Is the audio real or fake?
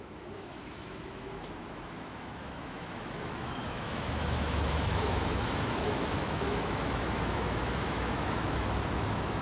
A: fake